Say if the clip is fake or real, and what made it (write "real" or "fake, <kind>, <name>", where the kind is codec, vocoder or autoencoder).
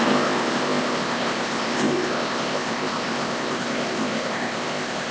fake, codec, ZipCodec